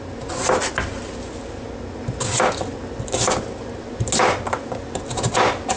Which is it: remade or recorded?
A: recorded